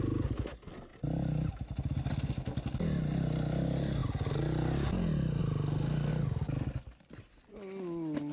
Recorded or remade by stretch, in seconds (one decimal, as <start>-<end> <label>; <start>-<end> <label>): 0.0-8.3 recorded